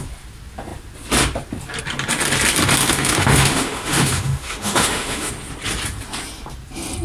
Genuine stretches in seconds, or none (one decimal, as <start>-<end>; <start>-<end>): 0.0-2.8; 5.3-7.0